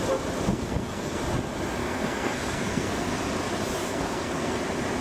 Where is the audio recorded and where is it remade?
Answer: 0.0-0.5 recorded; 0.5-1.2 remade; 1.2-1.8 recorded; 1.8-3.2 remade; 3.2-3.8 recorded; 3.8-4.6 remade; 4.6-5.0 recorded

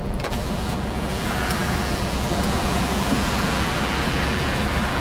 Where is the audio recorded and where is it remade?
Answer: 0.0-5.0 remade

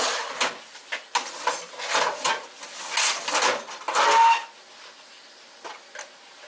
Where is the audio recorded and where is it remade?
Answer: 0.0-6.5 recorded

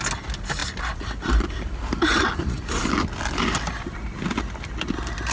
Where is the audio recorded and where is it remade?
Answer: 0.0-5.3 recorded

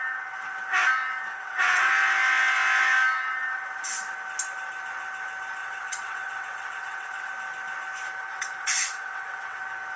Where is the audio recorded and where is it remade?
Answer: 0.0-1.3 recorded; 1.3-1.9 remade; 1.9-5.6 recorded; 5.6-7.3 remade; 7.3-8.2 recorded; 8.2-9.6 remade; 9.6-10.0 recorded